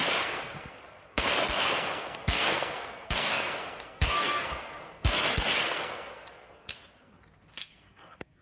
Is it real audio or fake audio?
fake